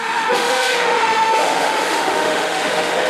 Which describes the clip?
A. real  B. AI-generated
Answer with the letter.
B